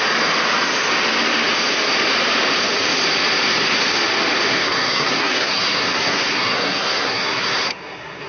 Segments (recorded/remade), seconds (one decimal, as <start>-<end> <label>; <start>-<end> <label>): 0.0-4.5 recorded; 4.5-8.3 remade